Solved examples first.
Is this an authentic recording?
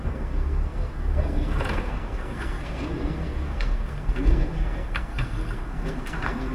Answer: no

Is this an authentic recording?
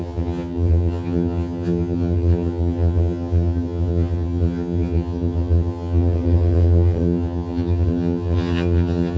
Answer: no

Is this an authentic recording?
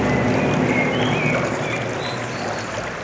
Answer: yes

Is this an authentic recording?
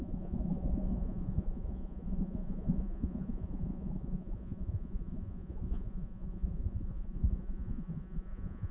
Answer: no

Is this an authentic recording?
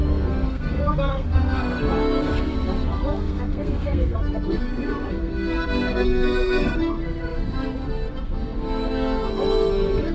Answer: no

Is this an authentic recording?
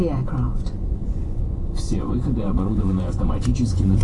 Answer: no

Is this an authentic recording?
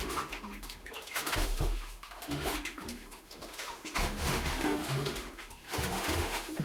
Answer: no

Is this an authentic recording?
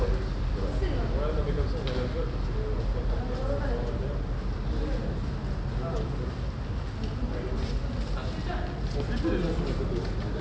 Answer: yes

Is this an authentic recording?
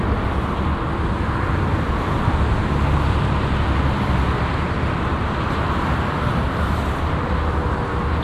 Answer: yes